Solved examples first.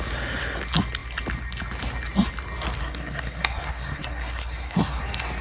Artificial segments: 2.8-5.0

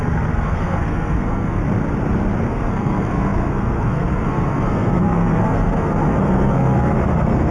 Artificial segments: 0.0-1.6; 2.5-7.5

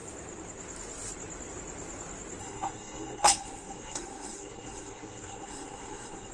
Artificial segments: 2.4-6.3

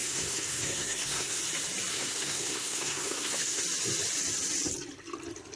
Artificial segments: 0.0-1.4; 1.9-3.6

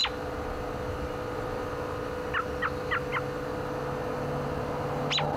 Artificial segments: none

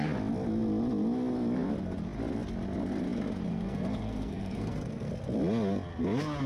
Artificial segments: 3.5-5.1